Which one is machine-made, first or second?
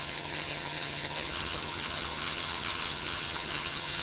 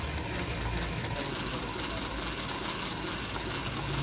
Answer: first